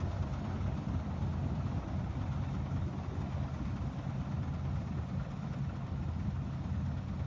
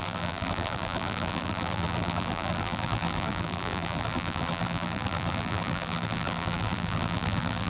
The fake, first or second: second